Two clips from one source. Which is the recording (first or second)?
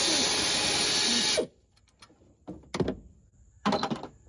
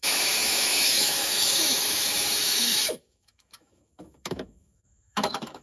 first